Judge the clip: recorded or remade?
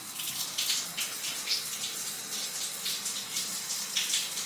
recorded